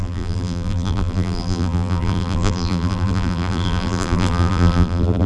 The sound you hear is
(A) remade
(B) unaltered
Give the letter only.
A